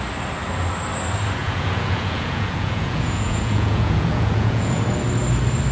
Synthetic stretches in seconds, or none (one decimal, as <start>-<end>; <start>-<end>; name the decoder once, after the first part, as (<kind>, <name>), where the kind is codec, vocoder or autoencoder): 1.4-4.8 (vocoder, Vocos)